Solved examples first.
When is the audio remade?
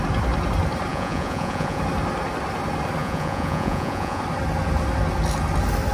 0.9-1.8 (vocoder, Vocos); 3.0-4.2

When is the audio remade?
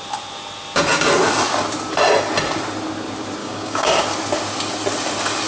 3.4-4.0 (codec, DAC)